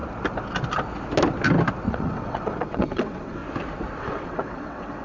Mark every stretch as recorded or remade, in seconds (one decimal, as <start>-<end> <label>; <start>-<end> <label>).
0.0-1.9 recorded; 1.9-3.4 remade; 3.4-4.0 recorded; 4.0-5.0 remade